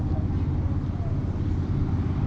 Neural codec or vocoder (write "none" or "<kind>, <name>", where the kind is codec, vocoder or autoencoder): none